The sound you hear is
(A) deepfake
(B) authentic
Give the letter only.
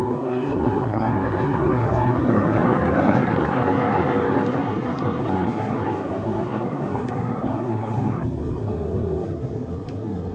A